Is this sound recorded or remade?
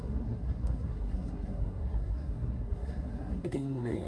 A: remade